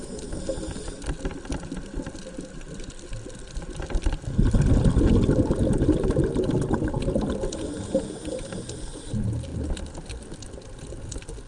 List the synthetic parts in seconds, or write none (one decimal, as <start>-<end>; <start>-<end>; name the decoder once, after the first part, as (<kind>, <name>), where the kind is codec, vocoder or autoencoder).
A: none